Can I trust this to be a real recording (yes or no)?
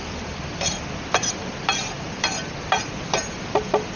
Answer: yes